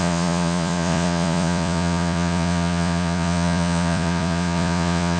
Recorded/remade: remade